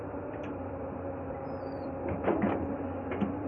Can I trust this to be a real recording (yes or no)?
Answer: no